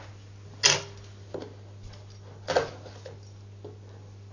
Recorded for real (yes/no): yes